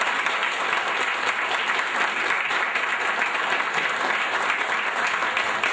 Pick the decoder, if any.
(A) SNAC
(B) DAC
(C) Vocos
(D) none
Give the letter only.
D